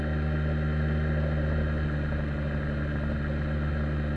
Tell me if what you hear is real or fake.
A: real